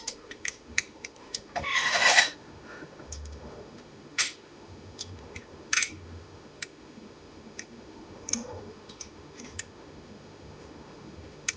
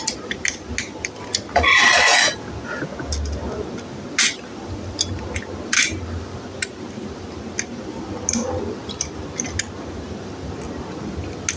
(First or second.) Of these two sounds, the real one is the second